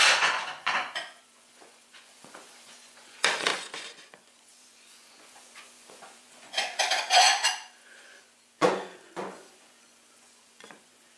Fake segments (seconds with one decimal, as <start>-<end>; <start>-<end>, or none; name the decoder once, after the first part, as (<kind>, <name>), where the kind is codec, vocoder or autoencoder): 0.0-11.2 (vocoder, Vocos)